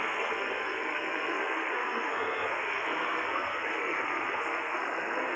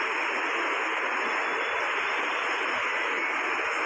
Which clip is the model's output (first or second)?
first